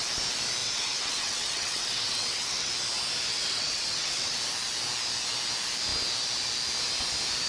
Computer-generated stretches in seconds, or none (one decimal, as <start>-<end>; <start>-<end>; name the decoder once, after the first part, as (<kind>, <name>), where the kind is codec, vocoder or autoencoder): 0.6-2.7 (vocoder, WaveNeXt); 3.3-4.4